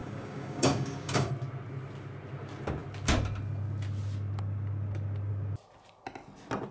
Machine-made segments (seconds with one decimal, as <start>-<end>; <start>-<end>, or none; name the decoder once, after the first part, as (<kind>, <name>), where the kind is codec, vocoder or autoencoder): 0.0-1.3 (codec, DAC)

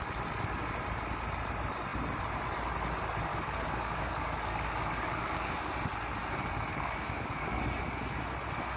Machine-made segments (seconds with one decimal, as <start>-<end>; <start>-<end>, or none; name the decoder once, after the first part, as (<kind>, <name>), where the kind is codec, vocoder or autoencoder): 3.3-5.7 (codec, DAC); 6.7-7.6

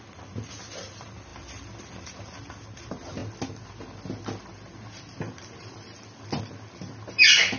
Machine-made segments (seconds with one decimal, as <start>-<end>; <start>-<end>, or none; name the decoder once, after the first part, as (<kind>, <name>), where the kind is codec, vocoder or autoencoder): none

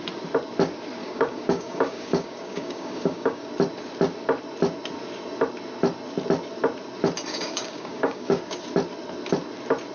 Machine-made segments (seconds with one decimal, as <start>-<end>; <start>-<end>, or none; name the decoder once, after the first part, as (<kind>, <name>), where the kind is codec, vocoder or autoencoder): 1.0-3.5 (codec, DAC); 7.3-8.6

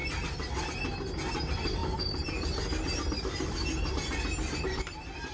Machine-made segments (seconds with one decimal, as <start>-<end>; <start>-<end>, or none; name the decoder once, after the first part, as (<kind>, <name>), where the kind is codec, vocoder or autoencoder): none